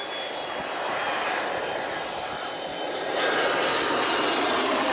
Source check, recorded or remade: recorded